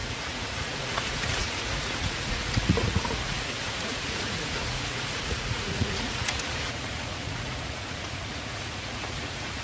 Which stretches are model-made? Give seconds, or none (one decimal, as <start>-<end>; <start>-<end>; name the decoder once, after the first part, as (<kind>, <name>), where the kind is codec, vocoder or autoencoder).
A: 0.0-9.6 (vocoder, Vocos)